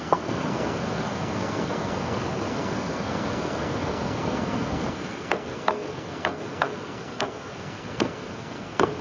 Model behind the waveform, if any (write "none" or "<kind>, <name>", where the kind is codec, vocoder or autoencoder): codec, SNAC